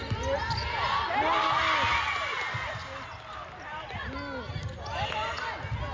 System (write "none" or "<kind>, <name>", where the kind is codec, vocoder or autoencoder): none